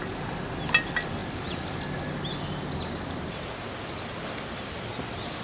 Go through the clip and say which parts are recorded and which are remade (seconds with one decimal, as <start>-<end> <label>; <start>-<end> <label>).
0.0-5.4 recorded